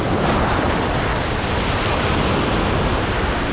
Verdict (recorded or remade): recorded